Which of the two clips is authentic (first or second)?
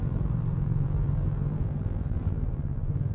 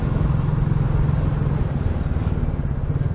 second